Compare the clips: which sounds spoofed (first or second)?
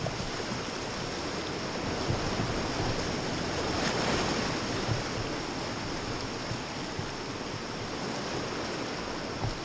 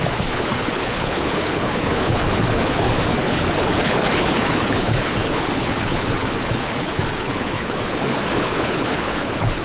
second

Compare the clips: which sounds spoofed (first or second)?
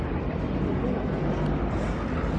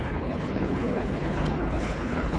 second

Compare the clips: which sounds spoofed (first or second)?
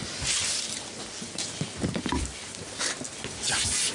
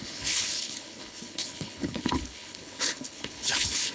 second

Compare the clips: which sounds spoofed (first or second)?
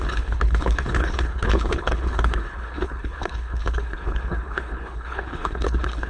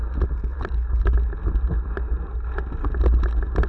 first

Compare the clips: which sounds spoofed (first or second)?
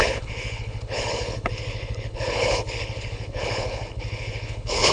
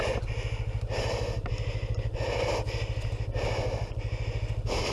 first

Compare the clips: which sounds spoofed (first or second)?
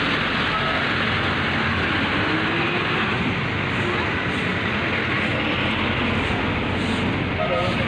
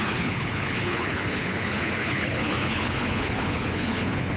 second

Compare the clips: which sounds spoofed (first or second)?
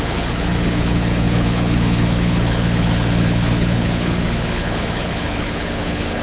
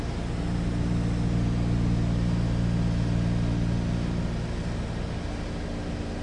first